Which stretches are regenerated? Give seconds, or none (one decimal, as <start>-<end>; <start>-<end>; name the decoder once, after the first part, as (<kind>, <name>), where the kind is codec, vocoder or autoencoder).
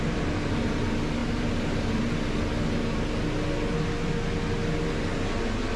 1.2-1.9 (vocoder, BigVGAN v2)